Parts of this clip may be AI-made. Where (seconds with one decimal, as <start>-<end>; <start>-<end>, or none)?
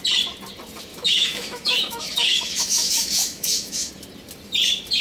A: 0.9-3.9